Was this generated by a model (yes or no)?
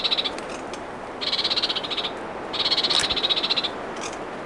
no